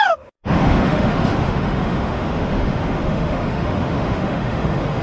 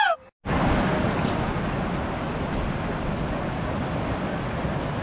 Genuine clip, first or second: second